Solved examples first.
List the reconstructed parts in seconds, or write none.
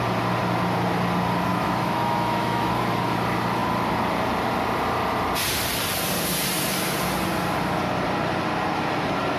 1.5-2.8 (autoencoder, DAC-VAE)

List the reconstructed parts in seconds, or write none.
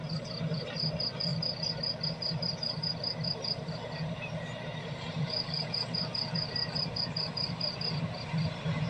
0.0-1.3 (vocoder, BigVGAN v2); 2.1-8.9